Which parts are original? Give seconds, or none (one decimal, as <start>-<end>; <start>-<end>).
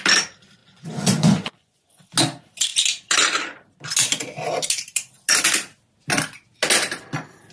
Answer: 0.0-0.6; 2.0-7.5